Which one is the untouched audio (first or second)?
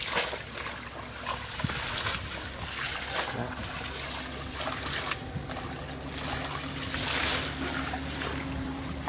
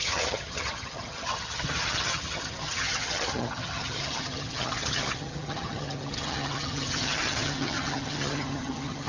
first